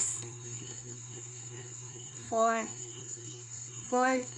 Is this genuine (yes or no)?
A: no